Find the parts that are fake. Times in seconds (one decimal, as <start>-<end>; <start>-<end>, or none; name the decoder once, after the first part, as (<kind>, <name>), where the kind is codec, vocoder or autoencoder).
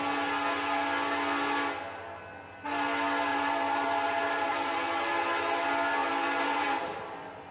3.3-5.1 (vocoder, BigVGAN v2); 6.0-7.0